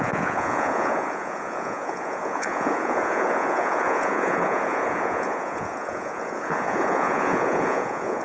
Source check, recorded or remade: remade